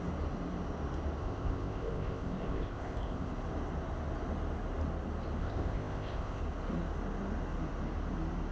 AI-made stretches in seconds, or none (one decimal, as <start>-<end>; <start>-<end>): 1.2-3.3; 5.4-6.4